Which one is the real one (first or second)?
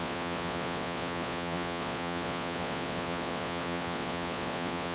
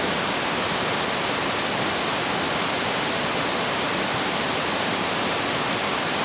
second